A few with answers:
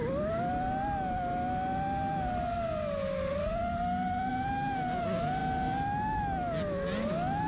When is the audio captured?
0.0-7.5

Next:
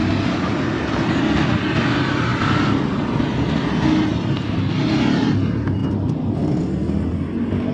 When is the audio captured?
0.0-7.7